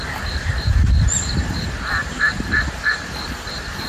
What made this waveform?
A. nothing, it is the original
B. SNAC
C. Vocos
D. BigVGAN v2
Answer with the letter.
D